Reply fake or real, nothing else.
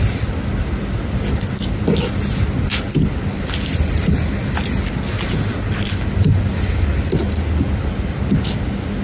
real